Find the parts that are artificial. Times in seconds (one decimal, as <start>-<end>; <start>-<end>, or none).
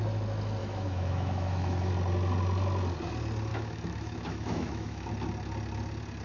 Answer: 0.6-1.9; 3.5-5.1